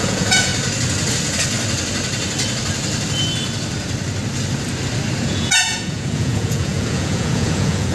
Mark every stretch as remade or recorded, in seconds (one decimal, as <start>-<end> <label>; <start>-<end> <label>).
0.0-0.5 remade; 0.5-5.2 recorded; 5.2-7.9 remade